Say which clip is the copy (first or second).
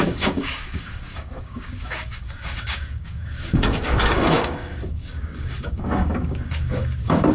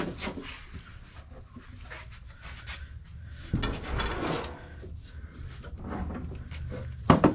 first